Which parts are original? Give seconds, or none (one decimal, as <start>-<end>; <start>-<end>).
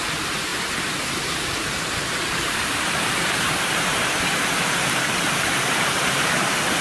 0.5-1.2